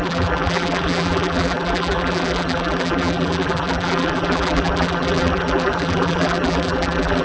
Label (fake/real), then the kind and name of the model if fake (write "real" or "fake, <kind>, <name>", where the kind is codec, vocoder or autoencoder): fake, vocoder, BigVGAN v2